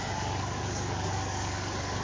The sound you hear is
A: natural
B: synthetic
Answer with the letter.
B